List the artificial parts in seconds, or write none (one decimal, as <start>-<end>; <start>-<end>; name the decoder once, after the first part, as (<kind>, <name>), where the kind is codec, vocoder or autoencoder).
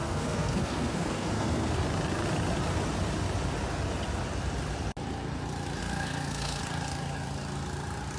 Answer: 0.0-1.8 (codec, SNAC); 5.8-6.6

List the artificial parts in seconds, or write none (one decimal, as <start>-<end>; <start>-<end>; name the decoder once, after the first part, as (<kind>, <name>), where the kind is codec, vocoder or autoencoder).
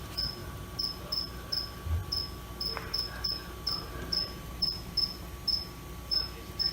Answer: none